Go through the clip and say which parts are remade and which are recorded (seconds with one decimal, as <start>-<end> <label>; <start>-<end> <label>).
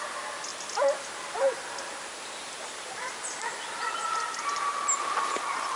0.0-0.5 recorded; 0.5-4.0 remade; 4.0-5.8 recorded